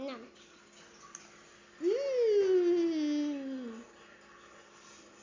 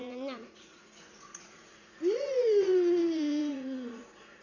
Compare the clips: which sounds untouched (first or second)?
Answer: first